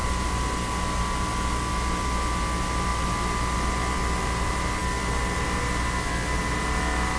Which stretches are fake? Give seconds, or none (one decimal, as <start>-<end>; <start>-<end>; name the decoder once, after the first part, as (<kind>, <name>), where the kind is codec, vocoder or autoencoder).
none